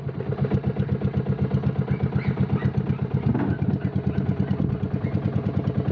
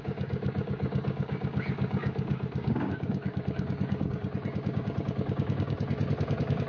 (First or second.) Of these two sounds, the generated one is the second